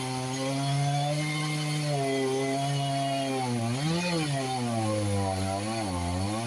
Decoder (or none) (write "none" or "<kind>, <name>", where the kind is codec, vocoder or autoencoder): none